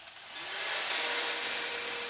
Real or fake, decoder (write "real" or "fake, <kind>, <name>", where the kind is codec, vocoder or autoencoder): real